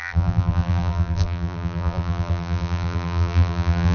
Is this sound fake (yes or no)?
yes